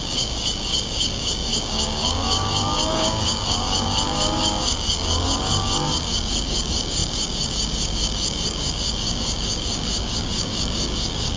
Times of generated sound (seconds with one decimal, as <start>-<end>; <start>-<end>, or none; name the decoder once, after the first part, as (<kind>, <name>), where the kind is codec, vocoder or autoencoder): 0.0-11.4 (codec, DAC)